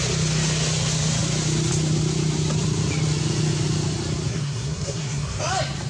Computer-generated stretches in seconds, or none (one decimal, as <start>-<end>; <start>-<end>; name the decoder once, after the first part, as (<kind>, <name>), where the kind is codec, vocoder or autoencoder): 4.3-5.4 (codec, SNAC)